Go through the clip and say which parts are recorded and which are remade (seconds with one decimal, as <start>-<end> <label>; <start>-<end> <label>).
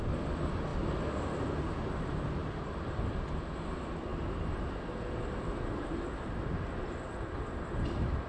0.0-8.3 recorded